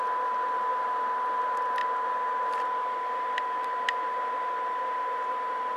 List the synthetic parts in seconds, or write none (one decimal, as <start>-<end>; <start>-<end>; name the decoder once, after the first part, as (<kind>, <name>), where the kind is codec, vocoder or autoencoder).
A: none